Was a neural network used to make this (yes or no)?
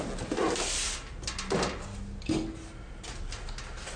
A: no